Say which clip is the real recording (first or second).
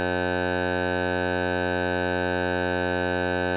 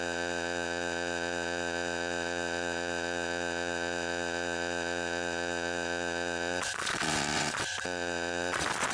first